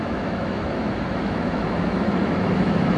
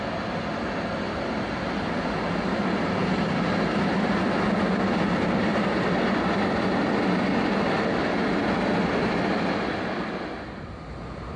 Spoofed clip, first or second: first